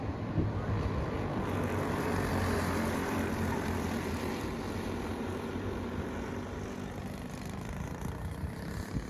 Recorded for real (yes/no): yes